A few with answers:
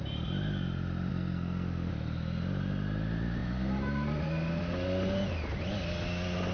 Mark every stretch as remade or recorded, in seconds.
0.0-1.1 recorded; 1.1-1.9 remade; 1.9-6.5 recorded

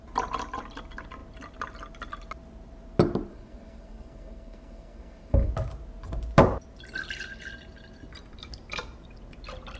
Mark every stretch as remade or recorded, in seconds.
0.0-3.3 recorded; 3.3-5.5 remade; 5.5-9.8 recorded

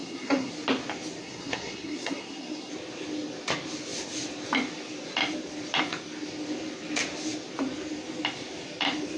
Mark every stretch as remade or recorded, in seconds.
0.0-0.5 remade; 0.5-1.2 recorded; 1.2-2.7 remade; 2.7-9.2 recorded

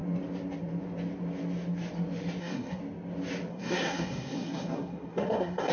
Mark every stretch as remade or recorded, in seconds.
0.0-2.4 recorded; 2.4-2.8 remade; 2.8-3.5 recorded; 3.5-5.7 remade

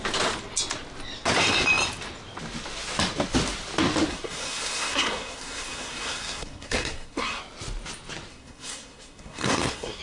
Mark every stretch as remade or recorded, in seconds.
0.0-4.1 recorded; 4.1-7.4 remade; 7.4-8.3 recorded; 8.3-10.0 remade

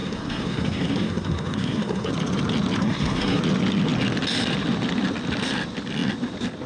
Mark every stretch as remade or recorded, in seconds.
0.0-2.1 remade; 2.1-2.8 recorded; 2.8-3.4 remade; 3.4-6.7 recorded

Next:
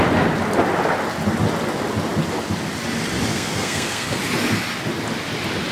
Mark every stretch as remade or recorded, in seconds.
0.0-3.3 recorded; 3.3-4.2 remade; 4.2-5.7 recorded